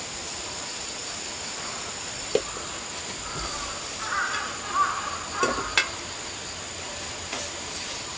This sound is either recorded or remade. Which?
recorded